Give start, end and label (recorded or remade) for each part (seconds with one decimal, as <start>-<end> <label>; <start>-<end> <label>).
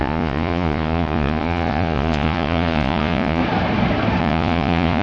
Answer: 0.0-3.4 remade; 3.4-4.2 recorded; 4.2-5.0 remade